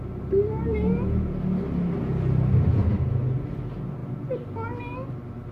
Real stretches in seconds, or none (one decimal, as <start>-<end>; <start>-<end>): 0.0-5.5